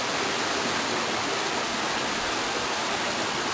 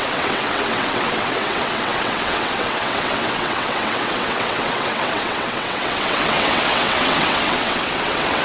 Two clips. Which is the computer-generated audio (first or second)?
second